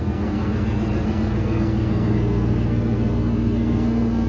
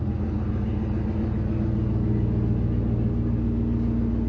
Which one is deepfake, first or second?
first